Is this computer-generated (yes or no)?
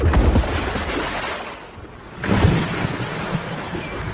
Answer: no